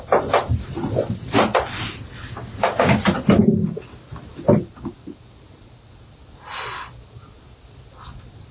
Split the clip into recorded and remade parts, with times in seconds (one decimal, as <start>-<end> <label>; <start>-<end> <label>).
0.0-8.5 recorded